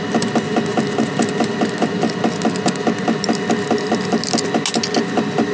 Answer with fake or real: real